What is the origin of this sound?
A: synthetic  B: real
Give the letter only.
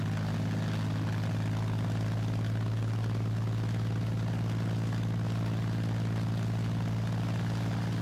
B